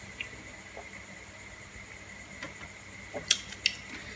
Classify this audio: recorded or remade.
recorded